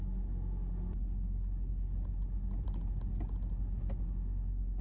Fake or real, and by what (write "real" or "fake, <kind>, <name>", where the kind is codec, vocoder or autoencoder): real